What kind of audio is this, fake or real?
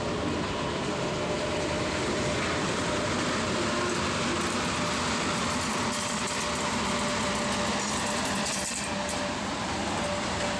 real